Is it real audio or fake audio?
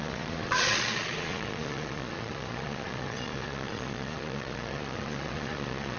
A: fake